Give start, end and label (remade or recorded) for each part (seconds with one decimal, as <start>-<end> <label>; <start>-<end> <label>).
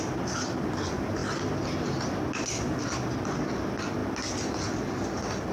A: 0.0-5.5 recorded